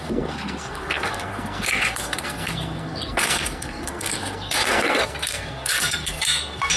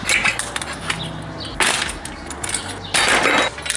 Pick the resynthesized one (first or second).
first